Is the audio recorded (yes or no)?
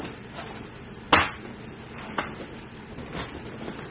yes